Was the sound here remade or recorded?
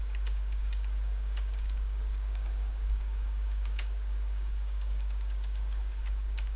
remade